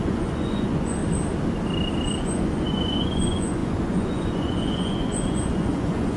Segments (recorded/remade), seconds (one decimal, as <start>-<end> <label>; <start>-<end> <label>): 0.0-1.0 remade; 1.0-2.2 recorded; 2.2-6.2 remade